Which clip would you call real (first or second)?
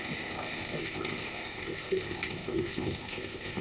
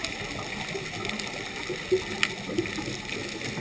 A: second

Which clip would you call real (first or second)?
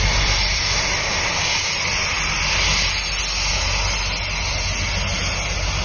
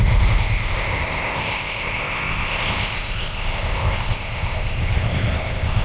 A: first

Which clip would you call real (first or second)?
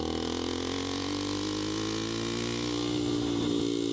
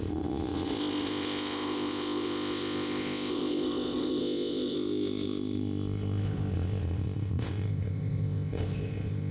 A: first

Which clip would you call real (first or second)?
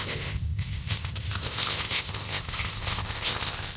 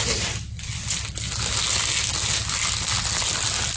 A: second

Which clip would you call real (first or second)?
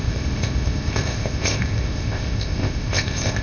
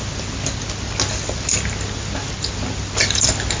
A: second